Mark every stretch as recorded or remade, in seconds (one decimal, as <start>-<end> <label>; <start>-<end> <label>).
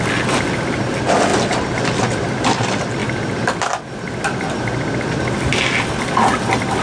0.0-6.8 recorded